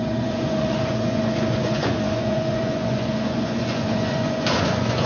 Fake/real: fake